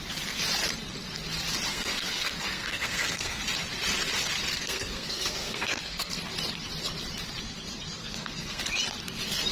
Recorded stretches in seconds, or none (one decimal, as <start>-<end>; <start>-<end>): 0.0-1.7; 3.4-4.5; 6.2-8.0; 8.6-9.5